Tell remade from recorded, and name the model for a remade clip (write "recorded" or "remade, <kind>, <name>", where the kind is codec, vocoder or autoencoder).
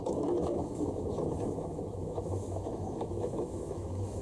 remade, autoencoder, DAC-VAE